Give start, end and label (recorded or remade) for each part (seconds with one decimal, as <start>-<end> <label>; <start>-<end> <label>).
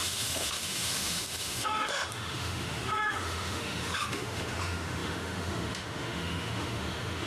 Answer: 0.0-7.3 remade